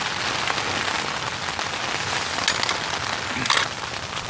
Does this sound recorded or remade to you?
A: recorded